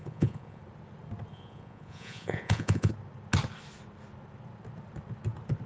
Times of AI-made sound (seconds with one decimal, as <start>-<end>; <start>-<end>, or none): 0.0-0.6; 1.3-2.9